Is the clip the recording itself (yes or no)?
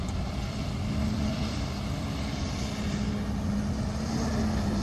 yes